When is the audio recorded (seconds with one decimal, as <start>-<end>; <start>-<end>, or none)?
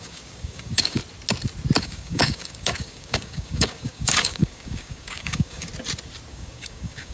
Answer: 1.0-1.8; 5.7-6.3